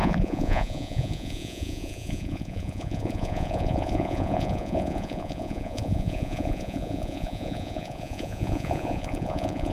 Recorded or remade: remade